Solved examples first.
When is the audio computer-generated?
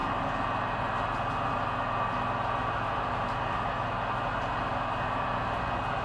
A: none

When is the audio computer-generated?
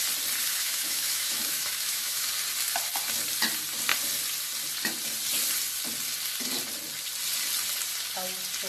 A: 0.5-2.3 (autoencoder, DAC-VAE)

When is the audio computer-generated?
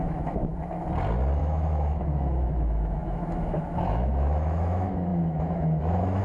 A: 0.0-0.5 (autoencoder, DAC-VAE); 1.4-6.2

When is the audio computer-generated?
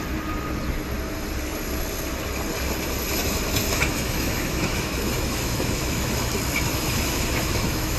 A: 3.7-6.3 (autoencoder, DAC-VAE); 6.7-8.0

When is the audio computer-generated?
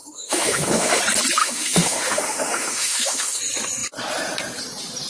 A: 0.0-1.0 (autoencoder, DAC-VAE); 1.4-3.4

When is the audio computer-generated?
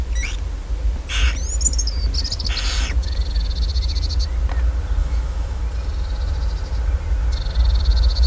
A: 5.0-5.6 (autoencoder, DAC-VAE)